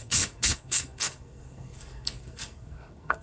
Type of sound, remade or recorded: remade